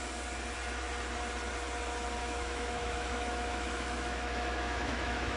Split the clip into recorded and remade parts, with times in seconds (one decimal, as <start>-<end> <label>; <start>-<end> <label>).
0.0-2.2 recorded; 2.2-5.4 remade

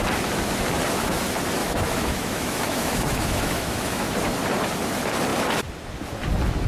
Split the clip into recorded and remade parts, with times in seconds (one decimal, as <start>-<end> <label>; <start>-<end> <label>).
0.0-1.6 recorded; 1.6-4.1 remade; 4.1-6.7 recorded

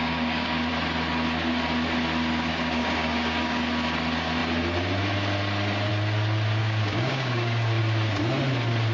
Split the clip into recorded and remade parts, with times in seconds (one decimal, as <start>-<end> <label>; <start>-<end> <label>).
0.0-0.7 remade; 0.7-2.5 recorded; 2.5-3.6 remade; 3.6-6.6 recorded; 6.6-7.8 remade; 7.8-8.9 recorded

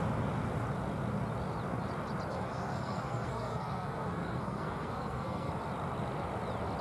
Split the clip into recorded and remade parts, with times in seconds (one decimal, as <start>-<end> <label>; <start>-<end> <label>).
0.0-2.3 recorded; 2.3-5.5 remade; 5.5-6.8 recorded

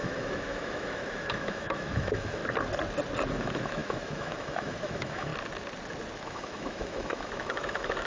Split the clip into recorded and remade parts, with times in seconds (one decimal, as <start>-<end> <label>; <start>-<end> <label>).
0.0-2.4 remade; 2.4-3.3 recorded; 3.3-5.3 remade; 5.3-6.2 recorded; 6.2-8.1 remade